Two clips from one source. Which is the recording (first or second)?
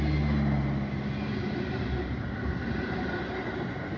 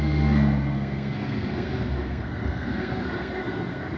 first